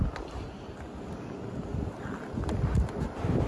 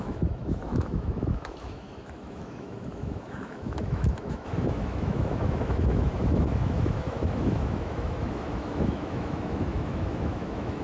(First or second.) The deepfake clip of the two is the second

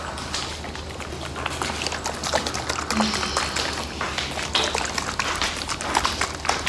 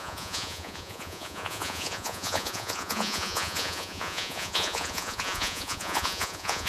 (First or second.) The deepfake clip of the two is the second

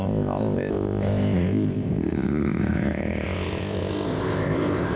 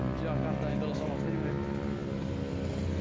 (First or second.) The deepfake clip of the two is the first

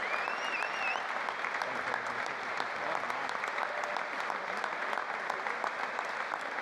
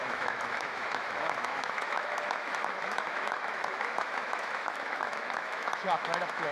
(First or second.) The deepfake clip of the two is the second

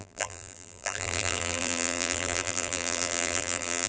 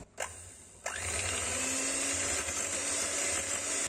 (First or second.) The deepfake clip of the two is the first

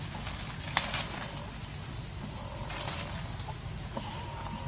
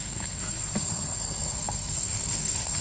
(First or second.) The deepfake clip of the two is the second